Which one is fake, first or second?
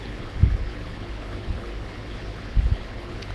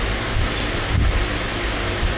first